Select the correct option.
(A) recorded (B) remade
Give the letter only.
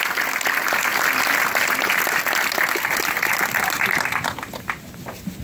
A